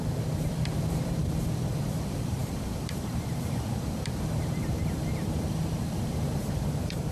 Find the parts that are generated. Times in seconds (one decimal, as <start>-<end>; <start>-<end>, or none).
0.0-7.1